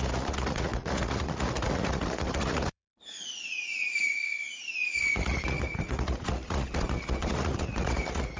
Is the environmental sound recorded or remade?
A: remade